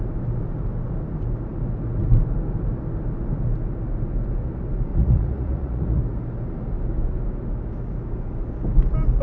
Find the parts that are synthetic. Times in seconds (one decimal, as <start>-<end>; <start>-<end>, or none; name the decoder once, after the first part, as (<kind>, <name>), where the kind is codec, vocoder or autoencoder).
4.9-6.0 (vocoder, Vocos)